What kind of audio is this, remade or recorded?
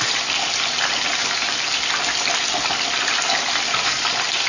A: recorded